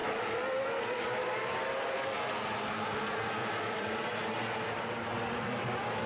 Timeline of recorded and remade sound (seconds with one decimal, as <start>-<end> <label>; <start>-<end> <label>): 0.0-1.4 remade; 1.4-3.4 recorded; 3.4-4.3 remade; 4.3-5.1 recorded; 5.1-5.6 remade; 5.6-6.1 recorded